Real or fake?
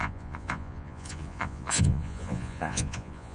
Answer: fake